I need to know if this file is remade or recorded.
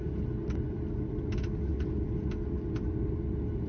recorded